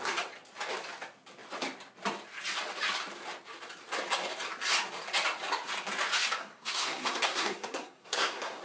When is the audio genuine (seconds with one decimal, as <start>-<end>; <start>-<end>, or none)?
0.0-6.4